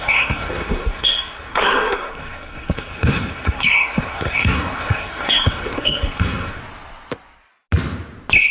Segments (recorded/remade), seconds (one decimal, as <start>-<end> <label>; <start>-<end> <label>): 0.0-6.6 remade; 6.6-8.5 recorded

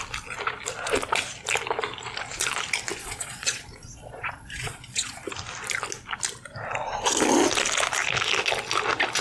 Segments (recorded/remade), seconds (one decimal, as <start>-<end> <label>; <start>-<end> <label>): 0.0-3.0 recorded; 3.0-5.3 remade; 5.3-9.2 recorded